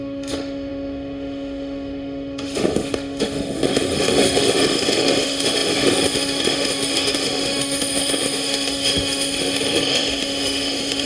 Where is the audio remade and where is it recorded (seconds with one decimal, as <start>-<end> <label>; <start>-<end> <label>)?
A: 0.0-11.1 remade